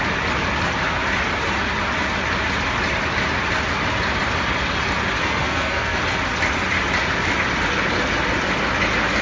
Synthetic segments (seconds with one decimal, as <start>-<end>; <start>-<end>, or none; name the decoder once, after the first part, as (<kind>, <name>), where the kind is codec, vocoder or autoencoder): 5.2-6.0 (codec, SNAC)